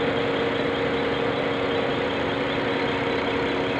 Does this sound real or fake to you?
real